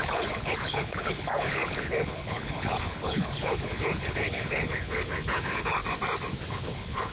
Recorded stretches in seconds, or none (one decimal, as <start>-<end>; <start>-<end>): 5.8-6.5